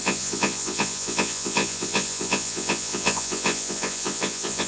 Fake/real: fake